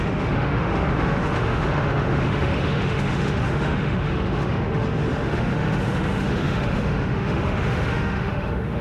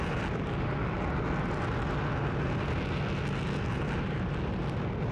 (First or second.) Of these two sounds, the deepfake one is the first